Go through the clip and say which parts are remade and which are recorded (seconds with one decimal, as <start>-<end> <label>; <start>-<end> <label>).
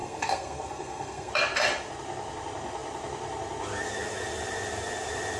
0.0-1.3 remade; 1.3-5.4 recorded